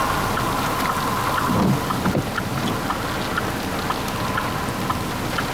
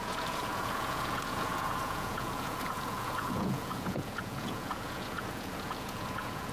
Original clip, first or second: first